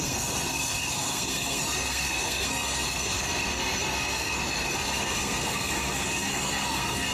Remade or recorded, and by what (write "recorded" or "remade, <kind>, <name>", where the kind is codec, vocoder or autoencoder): remade, codec, SNAC